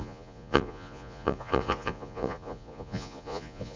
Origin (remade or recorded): remade